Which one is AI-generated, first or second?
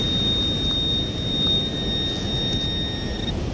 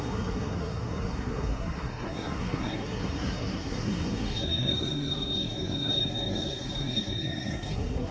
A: second